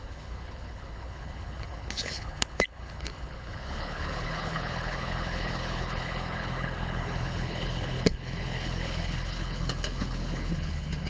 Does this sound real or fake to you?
fake